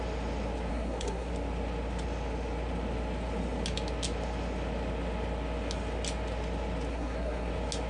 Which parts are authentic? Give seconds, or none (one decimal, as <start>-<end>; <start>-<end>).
0.0-0.7; 1.3-6.9; 7.5-7.9